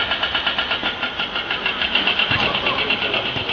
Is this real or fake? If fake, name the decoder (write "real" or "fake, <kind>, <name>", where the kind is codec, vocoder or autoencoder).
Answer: real